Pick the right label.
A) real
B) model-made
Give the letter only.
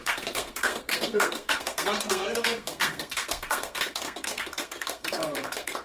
B